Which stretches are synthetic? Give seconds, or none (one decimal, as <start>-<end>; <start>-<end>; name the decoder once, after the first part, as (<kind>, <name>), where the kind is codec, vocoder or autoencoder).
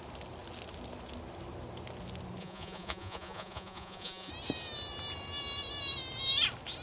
2.4-4.3 (vocoder, Vocos)